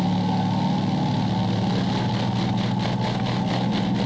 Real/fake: real